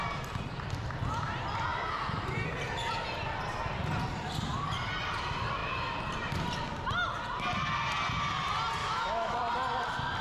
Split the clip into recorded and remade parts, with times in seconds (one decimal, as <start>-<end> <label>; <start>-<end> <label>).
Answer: 0.0-8.8 recorded; 8.8-9.4 remade; 9.4-10.2 recorded